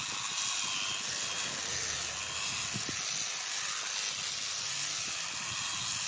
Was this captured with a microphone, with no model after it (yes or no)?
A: yes